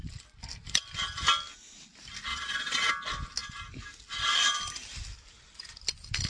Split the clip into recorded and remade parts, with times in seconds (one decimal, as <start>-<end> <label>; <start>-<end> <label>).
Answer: 0.0-2.3 recorded; 2.3-2.9 remade; 2.9-6.3 recorded